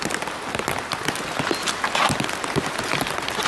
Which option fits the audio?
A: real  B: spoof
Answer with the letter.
A